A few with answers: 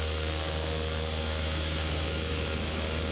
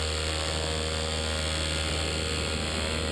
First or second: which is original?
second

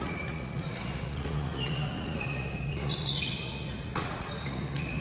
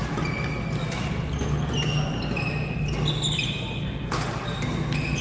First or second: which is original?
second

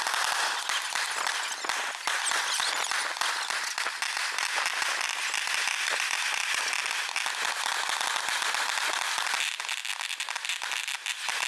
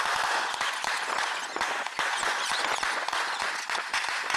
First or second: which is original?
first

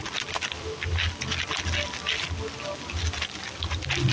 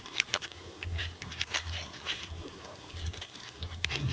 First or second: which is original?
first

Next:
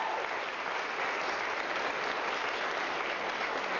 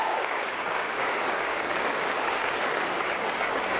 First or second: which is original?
first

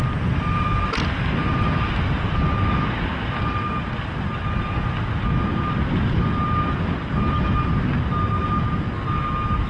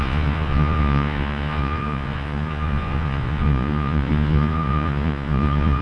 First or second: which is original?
first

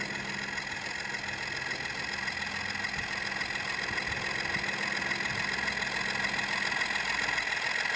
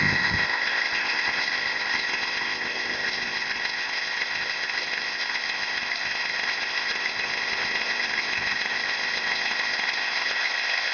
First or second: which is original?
first